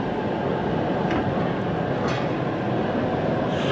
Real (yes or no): yes